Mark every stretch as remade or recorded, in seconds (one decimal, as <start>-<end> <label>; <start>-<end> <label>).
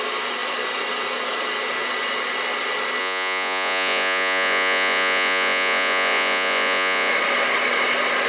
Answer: 0.0-3.0 recorded; 3.0-7.1 remade; 7.1-8.3 recorded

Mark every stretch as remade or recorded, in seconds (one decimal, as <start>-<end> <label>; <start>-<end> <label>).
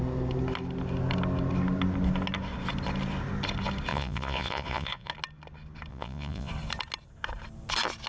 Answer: 0.0-3.9 recorded; 3.9-5.1 remade; 5.1-5.9 recorded; 5.9-6.5 remade; 6.5-8.1 recorded